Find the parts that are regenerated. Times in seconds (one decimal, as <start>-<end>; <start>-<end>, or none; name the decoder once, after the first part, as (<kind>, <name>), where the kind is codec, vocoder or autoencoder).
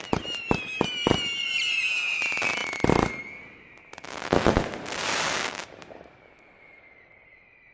0.0-2.6 (vocoder, BigVGAN v2); 5.7-7.7